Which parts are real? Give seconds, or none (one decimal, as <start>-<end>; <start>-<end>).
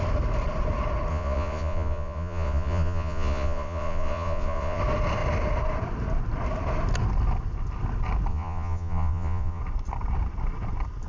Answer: 0.0-1.1; 4.8-8.3; 9.6-11.1